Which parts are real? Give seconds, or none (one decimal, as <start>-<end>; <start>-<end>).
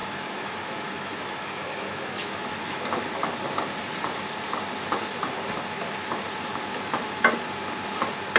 2.8-6.7; 7.3-8.4